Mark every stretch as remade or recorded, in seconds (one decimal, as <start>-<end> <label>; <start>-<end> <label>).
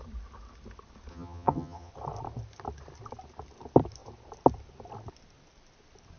0.0-1.1 recorded; 1.1-1.9 remade; 1.9-6.2 recorded